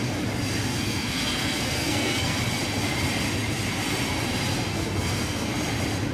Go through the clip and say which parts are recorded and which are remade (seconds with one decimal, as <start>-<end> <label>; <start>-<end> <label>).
0.0-0.7 recorded; 0.7-2.4 remade; 2.4-4.7 recorded; 4.7-5.5 remade; 5.5-6.1 recorded